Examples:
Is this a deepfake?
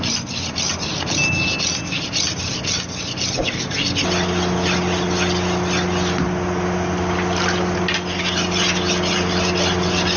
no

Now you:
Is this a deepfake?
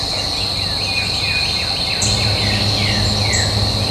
no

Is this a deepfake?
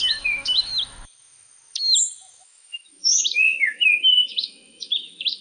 yes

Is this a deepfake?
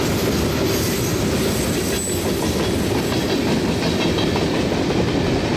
no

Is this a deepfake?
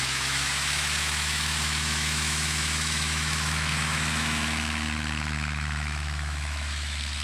yes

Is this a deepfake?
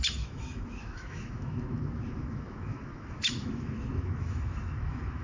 yes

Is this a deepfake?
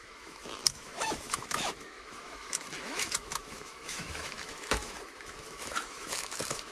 yes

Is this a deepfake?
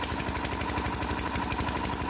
no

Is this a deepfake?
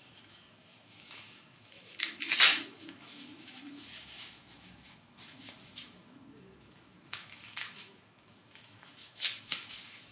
yes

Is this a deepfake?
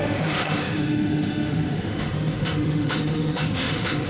yes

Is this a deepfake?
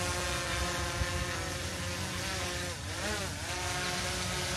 no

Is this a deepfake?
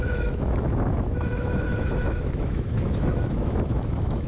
yes